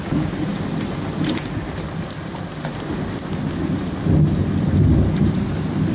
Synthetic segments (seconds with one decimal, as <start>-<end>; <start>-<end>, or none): none